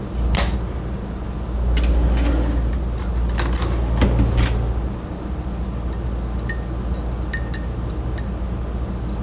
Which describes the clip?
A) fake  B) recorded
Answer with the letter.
B